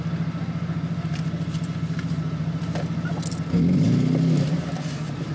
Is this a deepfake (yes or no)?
no